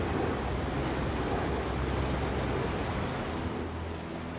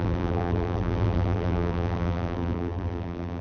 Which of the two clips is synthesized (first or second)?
second